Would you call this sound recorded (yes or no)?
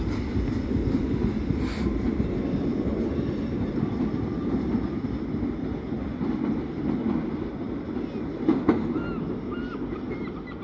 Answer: yes